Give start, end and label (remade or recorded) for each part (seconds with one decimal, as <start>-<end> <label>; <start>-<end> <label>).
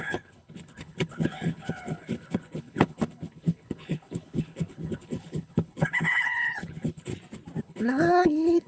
0.0-7.1 remade; 7.1-7.6 recorded; 7.6-8.7 remade